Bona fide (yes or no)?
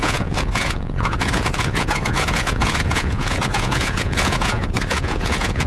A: no